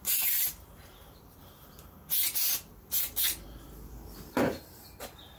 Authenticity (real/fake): fake